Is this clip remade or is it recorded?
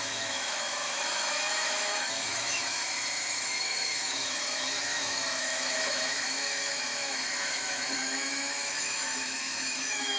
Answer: remade